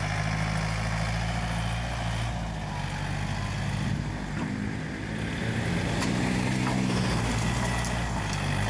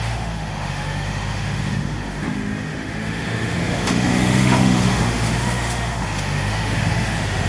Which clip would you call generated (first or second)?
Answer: second